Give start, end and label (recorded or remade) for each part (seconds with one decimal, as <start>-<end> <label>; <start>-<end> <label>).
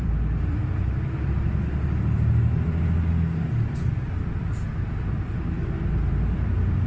0.0-0.6 remade; 0.6-4.1 recorded; 4.1-6.9 remade